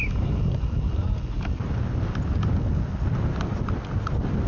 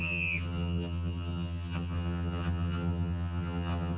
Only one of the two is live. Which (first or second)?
first